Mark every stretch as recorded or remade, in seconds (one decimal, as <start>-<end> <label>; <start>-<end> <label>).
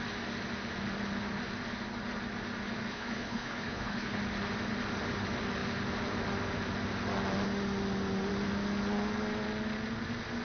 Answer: 0.0-2.9 recorded; 2.9-4.2 remade; 4.2-10.4 recorded